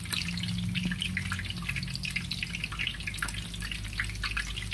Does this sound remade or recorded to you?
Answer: recorded